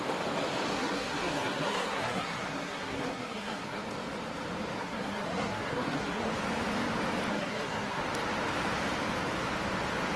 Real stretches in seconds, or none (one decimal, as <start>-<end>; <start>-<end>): 0.0-0.7; 3.8-4.8; 6.3-7.3; 8.0-10.2